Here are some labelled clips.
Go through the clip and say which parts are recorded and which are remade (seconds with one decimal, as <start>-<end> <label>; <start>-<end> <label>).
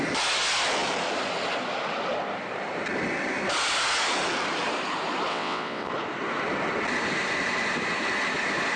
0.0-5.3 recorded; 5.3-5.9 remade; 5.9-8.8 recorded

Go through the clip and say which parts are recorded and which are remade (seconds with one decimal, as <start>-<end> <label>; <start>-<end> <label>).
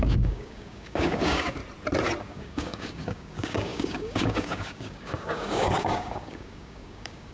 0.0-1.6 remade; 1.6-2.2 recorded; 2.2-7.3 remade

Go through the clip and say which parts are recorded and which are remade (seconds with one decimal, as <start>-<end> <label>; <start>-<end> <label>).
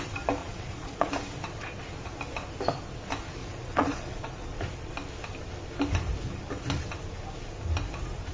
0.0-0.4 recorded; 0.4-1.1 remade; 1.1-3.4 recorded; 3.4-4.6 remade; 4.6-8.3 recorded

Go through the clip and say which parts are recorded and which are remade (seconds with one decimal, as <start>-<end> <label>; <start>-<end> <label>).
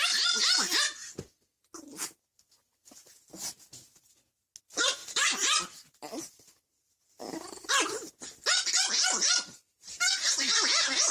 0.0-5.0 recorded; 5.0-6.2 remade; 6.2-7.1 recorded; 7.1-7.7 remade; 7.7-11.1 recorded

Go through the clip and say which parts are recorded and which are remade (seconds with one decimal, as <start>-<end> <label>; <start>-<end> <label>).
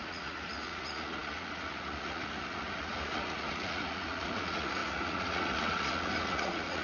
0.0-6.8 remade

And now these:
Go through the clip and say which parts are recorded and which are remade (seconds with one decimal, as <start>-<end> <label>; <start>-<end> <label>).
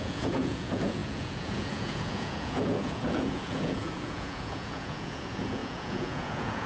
0.0-6.7 remade